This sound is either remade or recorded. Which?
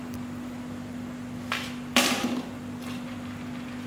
remade